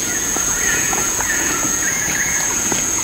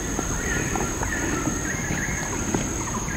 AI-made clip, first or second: first